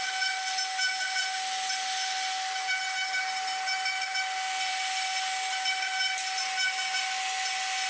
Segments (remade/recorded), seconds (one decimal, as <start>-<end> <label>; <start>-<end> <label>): 0.0-7.9 recorded